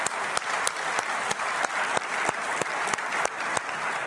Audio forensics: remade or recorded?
remade